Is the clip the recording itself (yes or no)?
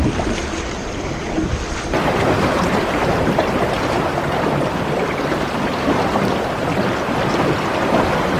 no